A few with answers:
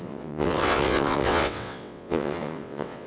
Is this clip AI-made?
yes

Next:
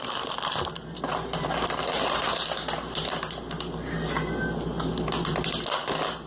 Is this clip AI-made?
no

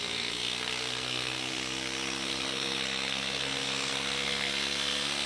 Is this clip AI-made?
yes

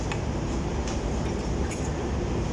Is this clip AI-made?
yes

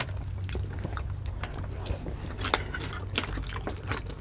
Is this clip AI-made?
no